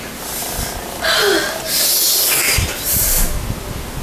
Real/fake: real